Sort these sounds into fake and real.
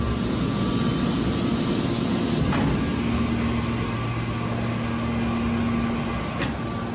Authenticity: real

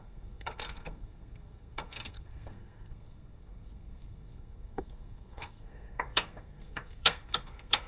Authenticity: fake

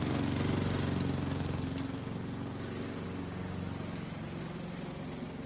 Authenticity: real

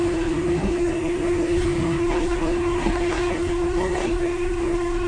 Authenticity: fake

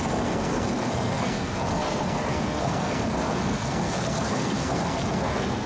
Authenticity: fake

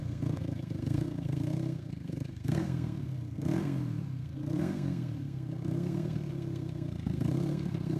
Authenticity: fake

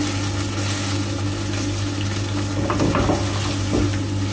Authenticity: real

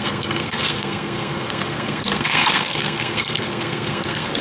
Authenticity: fake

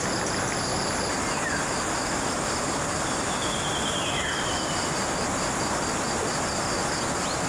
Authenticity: real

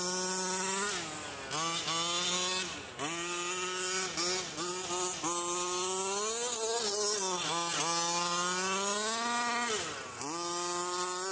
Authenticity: real